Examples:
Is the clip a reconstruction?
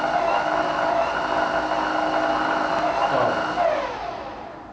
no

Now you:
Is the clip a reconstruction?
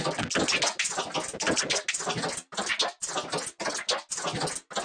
no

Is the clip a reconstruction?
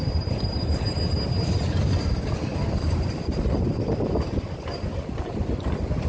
no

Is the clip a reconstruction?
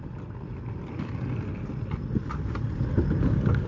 no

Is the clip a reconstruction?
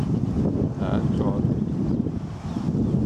no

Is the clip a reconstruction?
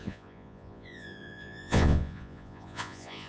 yes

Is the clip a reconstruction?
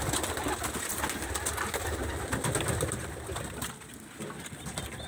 no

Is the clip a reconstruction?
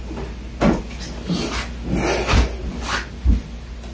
no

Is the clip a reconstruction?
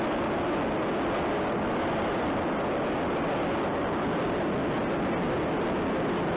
no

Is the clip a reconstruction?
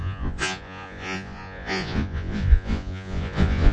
yes